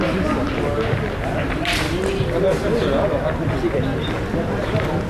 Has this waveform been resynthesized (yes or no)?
no